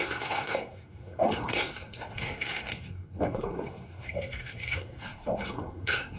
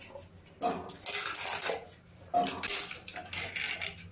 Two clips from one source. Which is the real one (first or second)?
second